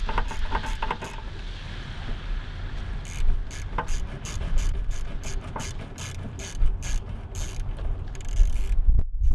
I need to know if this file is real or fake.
real